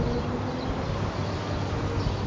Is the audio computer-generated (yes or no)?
no